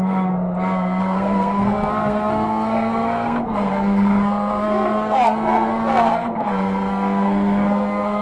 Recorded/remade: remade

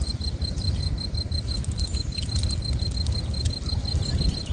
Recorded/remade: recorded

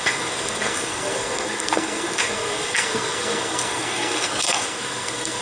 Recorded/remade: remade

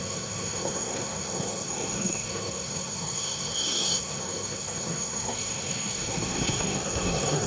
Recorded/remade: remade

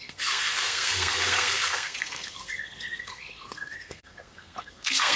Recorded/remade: remade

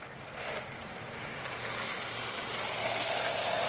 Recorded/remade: recorded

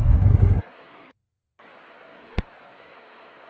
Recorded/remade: remade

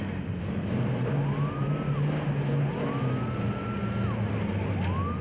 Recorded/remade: recorded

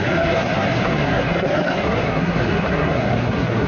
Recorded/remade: remade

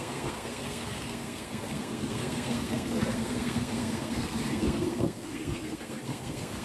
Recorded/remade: remade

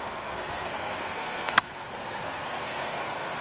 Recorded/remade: remade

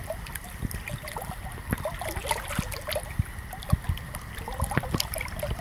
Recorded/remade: recorded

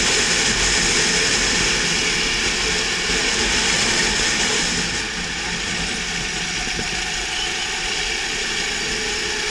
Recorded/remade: recorded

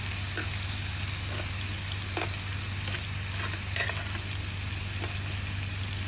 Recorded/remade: recorded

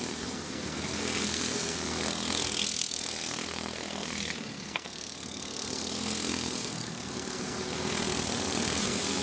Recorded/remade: remade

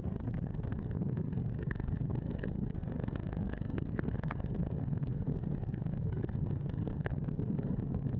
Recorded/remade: remade